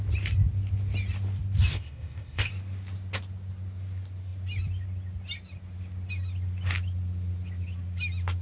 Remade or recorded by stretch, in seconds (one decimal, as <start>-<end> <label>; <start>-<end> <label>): 0.0-1.7 recorded; 1.7-2.5 remade; 2.5-8.4 recorded